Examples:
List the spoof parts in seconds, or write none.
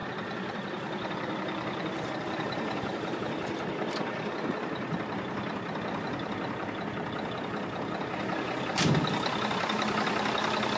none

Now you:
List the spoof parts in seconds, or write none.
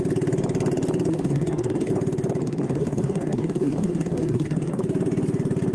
1.1-1.9 (codec, SNAC); 2.4-4.8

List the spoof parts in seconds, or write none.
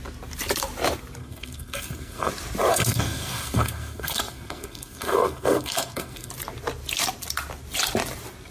1.2-2.3 (codec, SNAC); 2.7-6.3